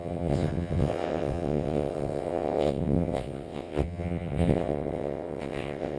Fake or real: fake